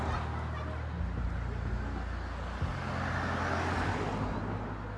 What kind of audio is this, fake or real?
real